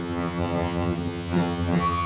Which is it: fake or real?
fake